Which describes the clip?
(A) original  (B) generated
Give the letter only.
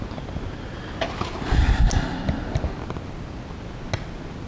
A